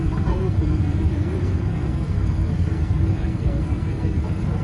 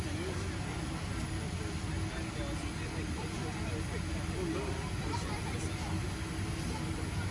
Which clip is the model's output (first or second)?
first